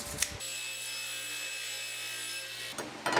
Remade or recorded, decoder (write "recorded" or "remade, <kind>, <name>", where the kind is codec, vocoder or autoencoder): recorded